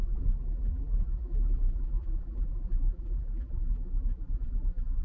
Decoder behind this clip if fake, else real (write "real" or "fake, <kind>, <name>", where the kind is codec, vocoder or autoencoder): fake, vocoder, BigVGAN v2